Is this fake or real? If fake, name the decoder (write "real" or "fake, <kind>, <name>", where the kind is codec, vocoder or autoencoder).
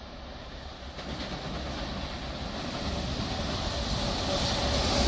real